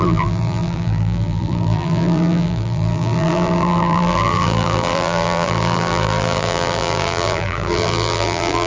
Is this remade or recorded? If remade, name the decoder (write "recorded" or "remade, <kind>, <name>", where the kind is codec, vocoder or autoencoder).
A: remade, vocoder, BigVGAN v2